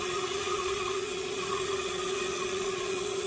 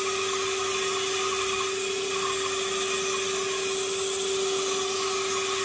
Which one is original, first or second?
second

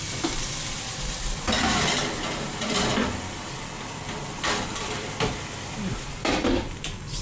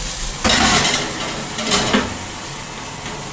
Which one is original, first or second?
second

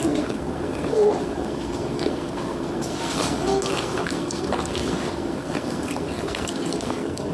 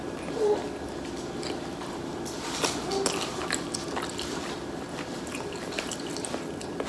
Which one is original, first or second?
second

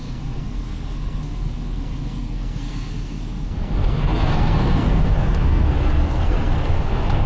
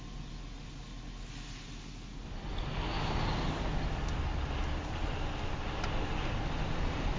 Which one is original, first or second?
second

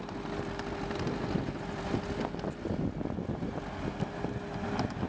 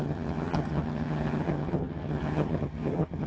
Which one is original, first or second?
first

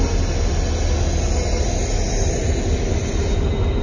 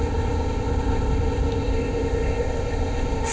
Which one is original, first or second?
first